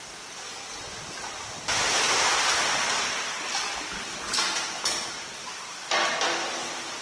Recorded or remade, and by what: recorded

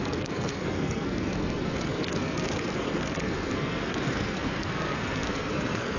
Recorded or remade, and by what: remade, codec, SNAC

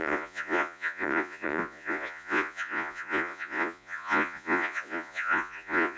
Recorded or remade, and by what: remade, vocoder, Vocos